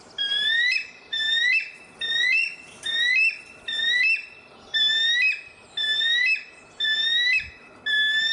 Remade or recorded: recorded